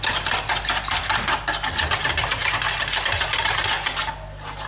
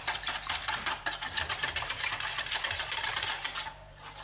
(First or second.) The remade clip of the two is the second